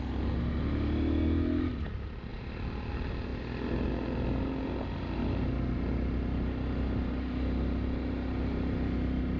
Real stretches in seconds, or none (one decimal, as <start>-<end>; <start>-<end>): 0.0-2.3; 2.9-9.4